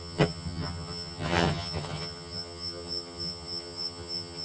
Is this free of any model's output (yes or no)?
no